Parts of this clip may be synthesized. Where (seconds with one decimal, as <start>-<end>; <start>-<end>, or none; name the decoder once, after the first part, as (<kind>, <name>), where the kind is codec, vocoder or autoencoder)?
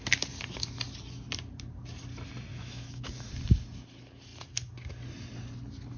2.5-3.3 (autoencoder, DAC-VAE)